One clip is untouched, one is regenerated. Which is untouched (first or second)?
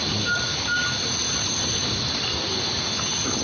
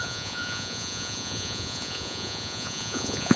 first